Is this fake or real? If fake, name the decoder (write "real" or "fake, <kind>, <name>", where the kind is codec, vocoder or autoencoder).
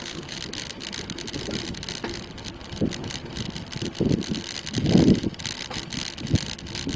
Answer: real